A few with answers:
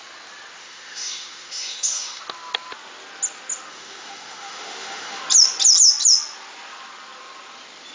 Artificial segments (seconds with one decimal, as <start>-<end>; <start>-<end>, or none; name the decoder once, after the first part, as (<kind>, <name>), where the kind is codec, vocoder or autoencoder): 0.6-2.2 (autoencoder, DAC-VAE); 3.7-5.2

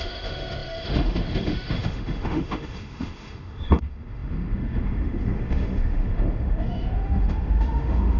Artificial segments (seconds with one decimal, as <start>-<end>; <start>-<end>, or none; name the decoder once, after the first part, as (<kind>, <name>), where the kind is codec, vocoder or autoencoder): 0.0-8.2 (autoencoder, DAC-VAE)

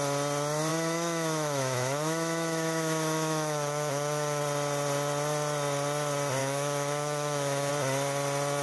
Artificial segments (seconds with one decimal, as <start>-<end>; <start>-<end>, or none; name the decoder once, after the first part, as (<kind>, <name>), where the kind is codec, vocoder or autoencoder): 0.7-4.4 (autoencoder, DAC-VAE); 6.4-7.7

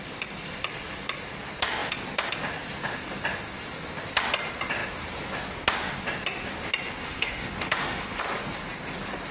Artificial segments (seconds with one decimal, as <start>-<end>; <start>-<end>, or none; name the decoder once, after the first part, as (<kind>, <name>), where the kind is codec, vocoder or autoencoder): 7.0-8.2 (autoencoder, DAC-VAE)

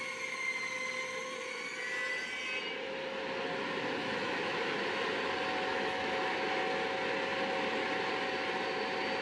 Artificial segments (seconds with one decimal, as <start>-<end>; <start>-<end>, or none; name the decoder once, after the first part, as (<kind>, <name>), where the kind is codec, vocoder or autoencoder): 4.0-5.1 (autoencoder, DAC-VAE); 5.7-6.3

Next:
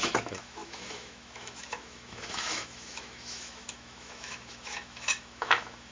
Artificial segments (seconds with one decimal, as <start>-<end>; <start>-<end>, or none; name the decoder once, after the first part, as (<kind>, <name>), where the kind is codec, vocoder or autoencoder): 0.0-5.9 (autoencoder, DAC-VAE)

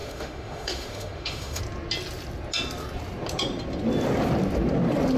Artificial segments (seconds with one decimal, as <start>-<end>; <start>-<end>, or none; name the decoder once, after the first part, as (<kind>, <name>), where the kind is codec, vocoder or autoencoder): 0.0-1.6 (autoencoder, DAC-VAE)

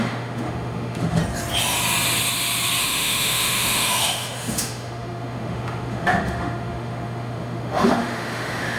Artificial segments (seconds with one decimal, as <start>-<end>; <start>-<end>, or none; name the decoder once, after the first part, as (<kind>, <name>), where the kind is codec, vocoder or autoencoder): 0.0-1.2 (autoencoder, DAC-VAE); 2.8-8.8